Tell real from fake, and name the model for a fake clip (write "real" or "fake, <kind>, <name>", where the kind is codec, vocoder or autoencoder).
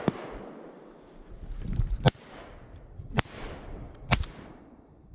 real